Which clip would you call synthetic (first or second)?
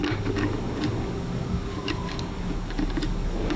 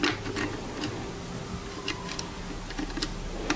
first